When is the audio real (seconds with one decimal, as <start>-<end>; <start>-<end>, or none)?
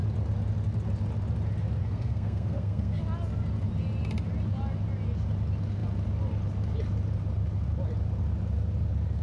0.0-1.8; 3.0-9.2